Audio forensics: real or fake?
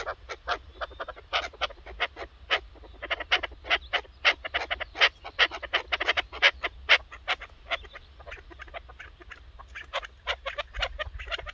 real